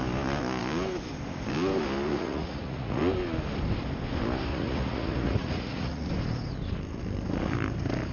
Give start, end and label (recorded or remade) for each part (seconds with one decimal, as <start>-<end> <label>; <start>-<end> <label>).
0.0-2.1 recorded; 2.1-3.0 remade; 3.0-4.5 recorded; 4.5-6.1 remade; 6.1-8.1 recorded